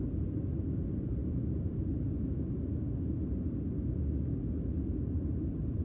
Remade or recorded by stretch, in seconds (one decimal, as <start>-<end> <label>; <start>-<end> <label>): 0.0-5.8 recorded

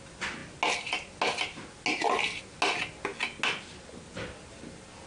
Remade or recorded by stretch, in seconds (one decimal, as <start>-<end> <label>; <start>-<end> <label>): 0.0-5.1 recorded

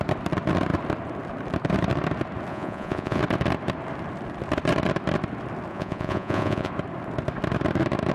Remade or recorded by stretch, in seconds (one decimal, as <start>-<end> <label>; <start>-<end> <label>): 0.0-2.5 recorded; 2.5-3.2 remade; 3.2-5.7 recorded; 5.7-6.7 remade; 6.7-8.1 recorded